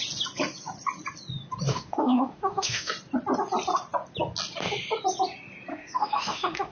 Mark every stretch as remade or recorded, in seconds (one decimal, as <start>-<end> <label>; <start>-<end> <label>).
0.0-1.7 recorded; 1.7-2.9 remade; 2.9-5.7 recorded; 5.7-6.7 remade